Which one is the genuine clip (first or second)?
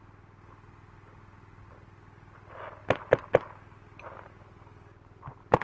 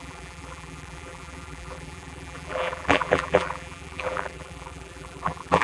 first